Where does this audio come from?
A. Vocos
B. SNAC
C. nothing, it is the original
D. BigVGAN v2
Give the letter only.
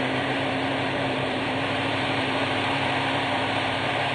D